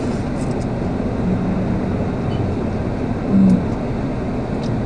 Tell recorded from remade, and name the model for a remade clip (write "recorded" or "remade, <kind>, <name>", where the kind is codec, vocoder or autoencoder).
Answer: recorded